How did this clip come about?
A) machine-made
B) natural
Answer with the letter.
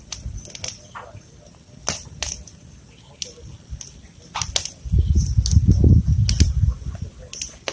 B